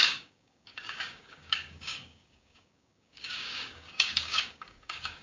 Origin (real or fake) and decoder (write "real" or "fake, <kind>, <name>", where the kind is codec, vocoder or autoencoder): fake, codec, DAC